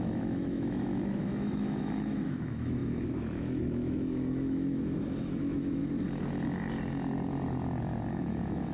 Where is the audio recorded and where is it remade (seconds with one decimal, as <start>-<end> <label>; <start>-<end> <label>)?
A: 0.0-5.8 remade; 5.8-8.2 recorded; 8.2-8.7 remade